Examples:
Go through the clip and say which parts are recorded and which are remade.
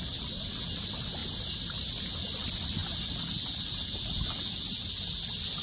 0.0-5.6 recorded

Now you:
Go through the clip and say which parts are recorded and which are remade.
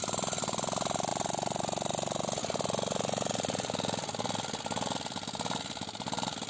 0.0-6.5 recorded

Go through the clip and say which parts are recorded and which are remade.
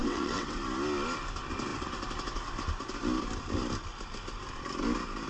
0.0-0.6 remade; 0.6-5.3 recorded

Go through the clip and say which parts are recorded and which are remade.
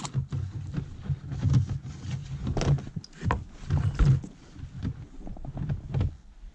0.0-6.5 recorded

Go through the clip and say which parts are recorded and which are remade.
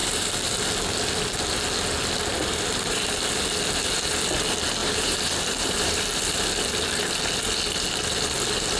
0.0-4.8 recorded; 4.8-6.0 remade; 6.0-8.8 recorded